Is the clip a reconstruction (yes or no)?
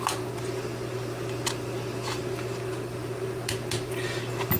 no